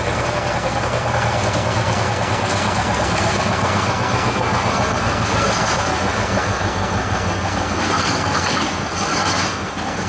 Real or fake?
fake